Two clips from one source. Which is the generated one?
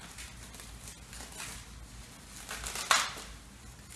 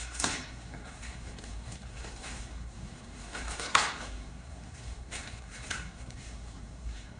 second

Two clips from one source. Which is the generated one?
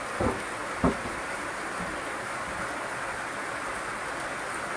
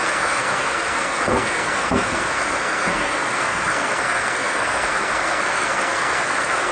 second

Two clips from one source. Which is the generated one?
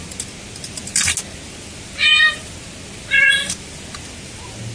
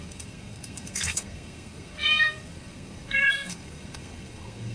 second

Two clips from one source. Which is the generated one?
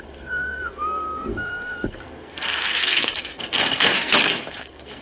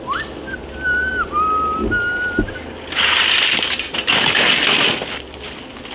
first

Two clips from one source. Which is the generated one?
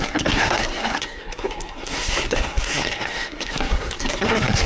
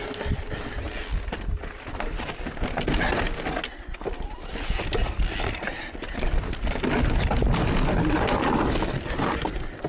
first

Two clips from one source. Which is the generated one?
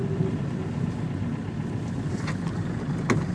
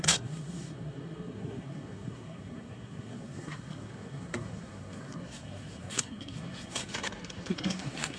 second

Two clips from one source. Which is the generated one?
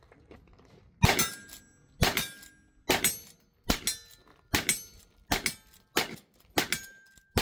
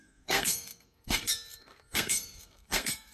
second